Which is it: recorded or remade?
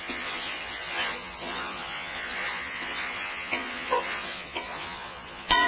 remade